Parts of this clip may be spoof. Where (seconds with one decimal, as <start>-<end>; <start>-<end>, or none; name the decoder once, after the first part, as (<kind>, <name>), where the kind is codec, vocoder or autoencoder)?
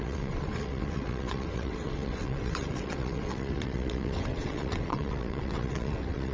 0.0-6.3 (vocoder, WaveNeXt)